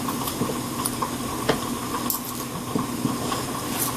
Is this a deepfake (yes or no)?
no